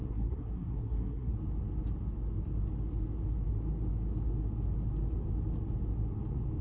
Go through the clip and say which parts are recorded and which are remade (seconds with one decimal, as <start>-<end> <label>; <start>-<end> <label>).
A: 0.0-1.3 remade; 1.3-6.6 recorded